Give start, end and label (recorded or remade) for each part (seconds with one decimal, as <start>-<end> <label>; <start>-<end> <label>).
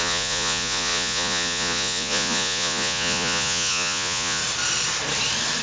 0.0-4.4 remade; 4.4-5.6 recorded